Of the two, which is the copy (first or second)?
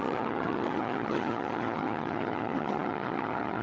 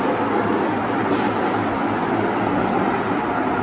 first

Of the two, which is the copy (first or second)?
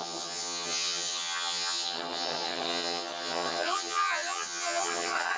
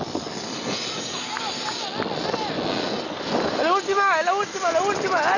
first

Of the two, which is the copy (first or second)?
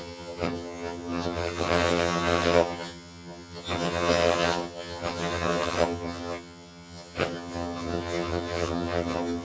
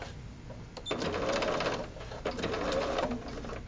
first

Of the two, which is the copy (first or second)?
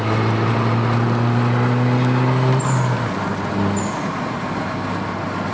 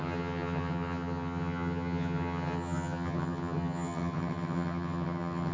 second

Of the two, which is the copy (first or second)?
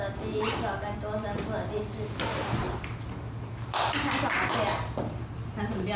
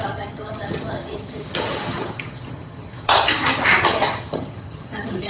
second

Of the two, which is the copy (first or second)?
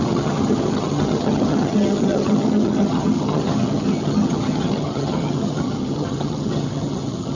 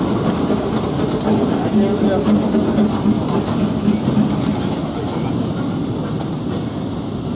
first